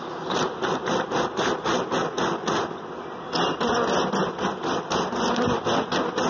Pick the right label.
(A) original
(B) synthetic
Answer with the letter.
A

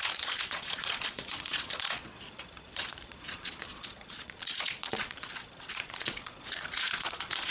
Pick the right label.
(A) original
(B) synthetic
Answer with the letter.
B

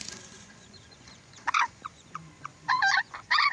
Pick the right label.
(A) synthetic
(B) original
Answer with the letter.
A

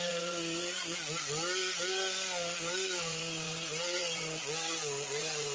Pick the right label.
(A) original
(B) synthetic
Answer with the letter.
B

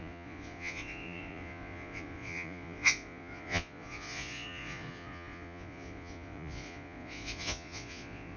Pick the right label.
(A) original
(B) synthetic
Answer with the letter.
B